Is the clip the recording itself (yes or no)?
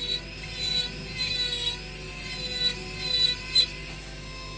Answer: yes